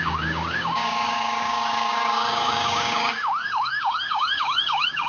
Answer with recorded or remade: remade